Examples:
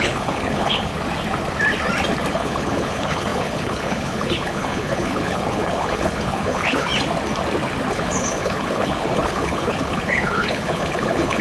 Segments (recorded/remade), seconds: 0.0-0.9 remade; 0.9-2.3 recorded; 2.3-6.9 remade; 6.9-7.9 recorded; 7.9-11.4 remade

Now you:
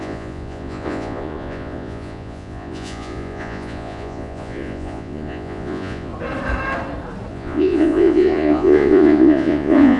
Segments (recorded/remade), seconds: 0.0-6.1 remade; 6.1-7.3 recorded; 7.3-10.0 remade